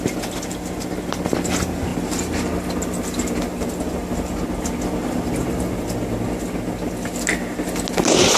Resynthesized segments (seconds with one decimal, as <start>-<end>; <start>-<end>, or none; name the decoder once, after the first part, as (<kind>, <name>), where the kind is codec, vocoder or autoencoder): none

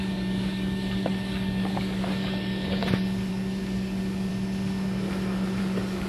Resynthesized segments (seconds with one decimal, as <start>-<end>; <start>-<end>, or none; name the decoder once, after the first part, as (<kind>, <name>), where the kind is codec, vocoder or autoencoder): 0.0-2.8 (codec, DAC); 3.3-4.3; 5.6-6.1

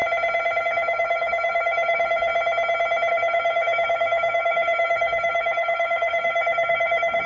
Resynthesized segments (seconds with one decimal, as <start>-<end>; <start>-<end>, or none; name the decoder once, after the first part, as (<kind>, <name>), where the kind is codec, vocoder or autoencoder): 0.6-2.3 (codec, DAC); 3.1-7.3

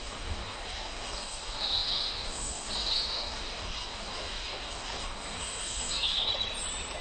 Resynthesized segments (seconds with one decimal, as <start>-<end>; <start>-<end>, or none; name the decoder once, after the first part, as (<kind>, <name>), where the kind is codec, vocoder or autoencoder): 0.0-6.3 (codec, DAC)